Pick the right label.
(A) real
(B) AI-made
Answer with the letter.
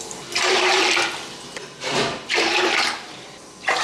A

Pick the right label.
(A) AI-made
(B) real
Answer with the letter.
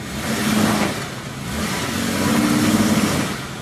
B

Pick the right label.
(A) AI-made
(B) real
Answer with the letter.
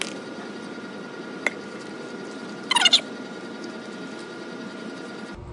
B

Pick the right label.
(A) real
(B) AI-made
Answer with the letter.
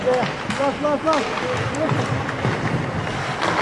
A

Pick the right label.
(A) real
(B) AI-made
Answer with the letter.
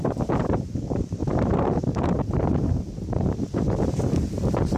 B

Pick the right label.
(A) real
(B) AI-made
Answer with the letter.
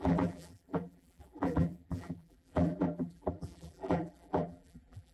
B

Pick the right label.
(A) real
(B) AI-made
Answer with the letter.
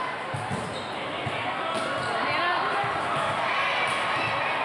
A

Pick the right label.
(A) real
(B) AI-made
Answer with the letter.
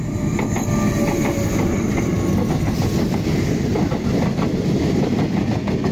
A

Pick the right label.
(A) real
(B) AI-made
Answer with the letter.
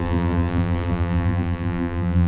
B